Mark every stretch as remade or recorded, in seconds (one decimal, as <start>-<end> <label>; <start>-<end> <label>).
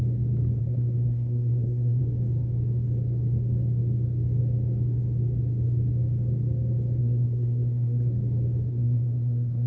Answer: 0.0-0.6 recorded; 0.6-2.0 remade; 2.0-7.0 recorded; 7.0-8.1 remade; 8.1-8.7 recorded; 8.7-9.7 remade